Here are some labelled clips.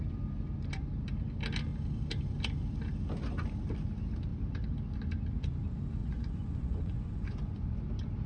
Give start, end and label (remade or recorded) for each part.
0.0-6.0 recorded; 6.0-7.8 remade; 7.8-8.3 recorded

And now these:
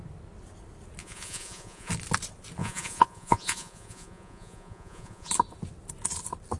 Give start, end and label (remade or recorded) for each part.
0.0-1.0 recorded; 1.0-1.9 remade; 1.9-2.6 recorded; 2.6-5.3 remade; 5.3-6.6 recorded

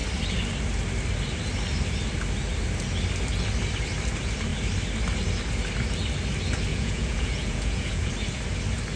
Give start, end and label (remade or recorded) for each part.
0.0-6.7 recorded; 6.7-8.1 remade; 8.1-9.0 recorded

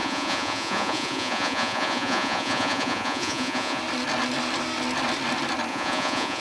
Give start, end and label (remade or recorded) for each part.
0.0-3.8 remade; 3.8-5.7 recorded; 5.7-6.4 remade

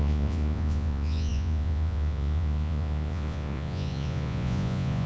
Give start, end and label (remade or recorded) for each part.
0.0-5.1 remade

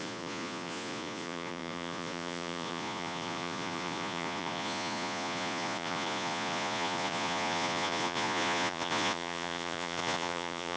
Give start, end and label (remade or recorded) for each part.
0.0-10.8 remade

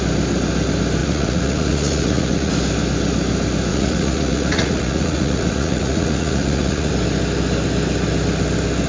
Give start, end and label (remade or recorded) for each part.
0.0-1.0 recorded; 1.0-2.5 remade; 2.5-3.7 recorded; 3.7-6.9 remade; 6.9-8.9 recorded

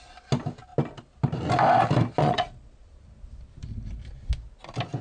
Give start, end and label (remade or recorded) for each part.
0.0-2.2 recorded; 2.2-2.9 remade; 2.9-5.0 recorded